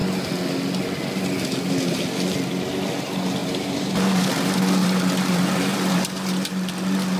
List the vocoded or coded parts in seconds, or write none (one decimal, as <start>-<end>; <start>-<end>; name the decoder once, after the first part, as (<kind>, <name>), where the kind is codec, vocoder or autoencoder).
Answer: 3.4-4.3 (vocoder, BigVGAN v2); 4.8-6.5